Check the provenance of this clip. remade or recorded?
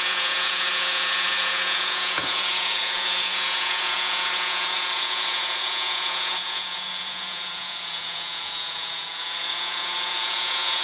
remade